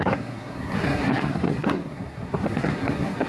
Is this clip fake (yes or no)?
yes